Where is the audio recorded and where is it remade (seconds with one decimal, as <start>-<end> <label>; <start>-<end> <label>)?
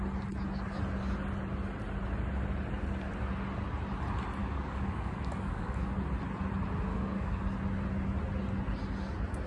0.0-4.4 recorded; 4.4-5.9 remade; 5.9-6.9 recorded; 6.9-7.4 remade; 7.4-9.5 recorded